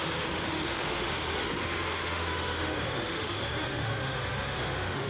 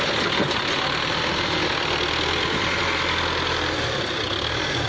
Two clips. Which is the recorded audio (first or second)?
second